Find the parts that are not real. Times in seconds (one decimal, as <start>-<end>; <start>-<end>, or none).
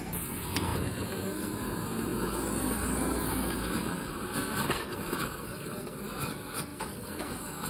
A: 0.0-7.7